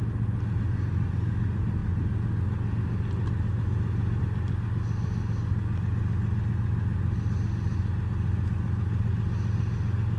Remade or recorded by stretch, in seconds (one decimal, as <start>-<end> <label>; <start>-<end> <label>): 0.0-10.2 recorded